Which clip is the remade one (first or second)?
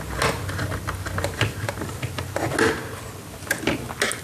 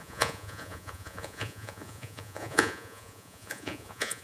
second